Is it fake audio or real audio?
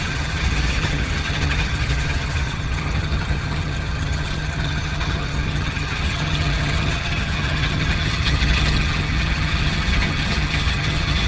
fake